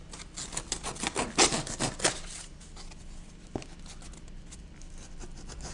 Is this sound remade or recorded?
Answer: recorded